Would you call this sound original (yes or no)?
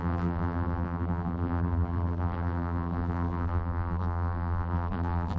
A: no